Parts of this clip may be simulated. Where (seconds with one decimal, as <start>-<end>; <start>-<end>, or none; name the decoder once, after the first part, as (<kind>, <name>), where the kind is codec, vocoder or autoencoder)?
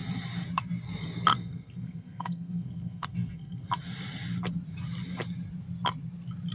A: 1.3-3.7 (codec, SNAC)